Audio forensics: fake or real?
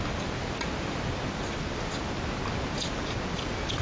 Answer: real